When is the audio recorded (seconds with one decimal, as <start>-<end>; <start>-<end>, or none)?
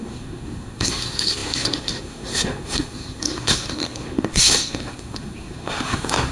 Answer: none